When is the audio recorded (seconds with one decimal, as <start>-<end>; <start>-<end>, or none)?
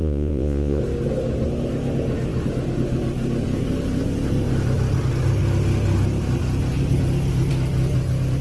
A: 0.8-8.4